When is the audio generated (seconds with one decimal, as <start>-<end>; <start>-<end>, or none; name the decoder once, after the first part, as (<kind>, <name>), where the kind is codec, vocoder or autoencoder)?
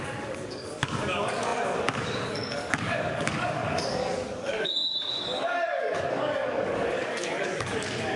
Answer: 0.0-8.2 (codec, DAC)